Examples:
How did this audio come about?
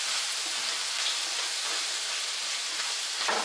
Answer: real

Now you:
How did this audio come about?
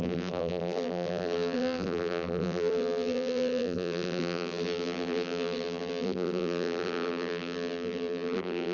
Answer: fake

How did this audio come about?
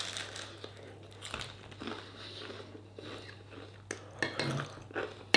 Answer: real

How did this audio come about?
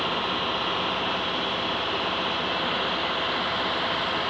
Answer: real